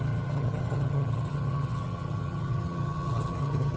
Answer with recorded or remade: remade